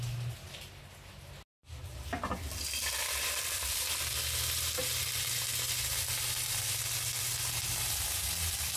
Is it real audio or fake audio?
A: real